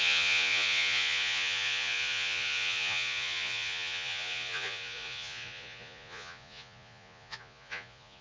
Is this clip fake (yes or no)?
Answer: yes